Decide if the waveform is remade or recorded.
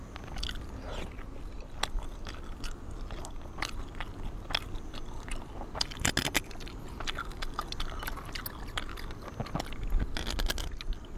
recorded